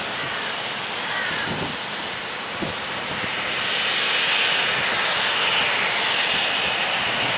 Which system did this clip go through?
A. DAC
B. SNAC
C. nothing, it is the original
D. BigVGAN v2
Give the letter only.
C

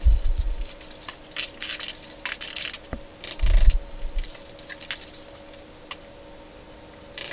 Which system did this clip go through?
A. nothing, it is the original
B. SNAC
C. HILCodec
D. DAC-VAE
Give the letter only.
A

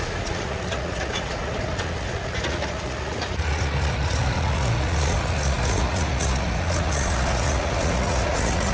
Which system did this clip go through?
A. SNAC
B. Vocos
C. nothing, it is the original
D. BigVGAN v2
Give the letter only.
B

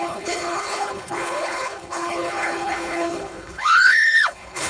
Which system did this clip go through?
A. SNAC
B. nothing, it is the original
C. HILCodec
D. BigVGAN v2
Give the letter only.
C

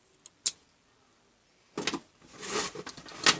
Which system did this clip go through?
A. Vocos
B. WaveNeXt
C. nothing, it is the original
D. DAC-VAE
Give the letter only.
C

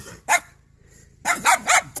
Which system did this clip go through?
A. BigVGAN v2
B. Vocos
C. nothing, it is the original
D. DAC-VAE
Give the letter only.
C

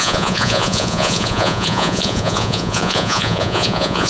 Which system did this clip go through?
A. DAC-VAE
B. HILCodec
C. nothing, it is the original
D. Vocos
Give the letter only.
D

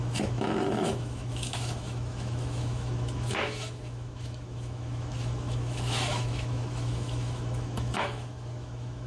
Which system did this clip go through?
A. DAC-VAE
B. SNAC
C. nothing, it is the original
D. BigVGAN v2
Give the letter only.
A